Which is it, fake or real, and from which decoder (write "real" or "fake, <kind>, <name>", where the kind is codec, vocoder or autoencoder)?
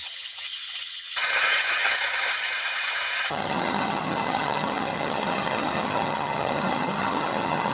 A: fake, vocoder, HiFi-GAN